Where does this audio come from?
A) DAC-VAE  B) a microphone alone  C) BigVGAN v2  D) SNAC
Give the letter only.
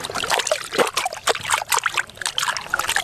B